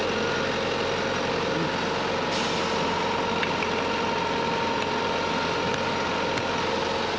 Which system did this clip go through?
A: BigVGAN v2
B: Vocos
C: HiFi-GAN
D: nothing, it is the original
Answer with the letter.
D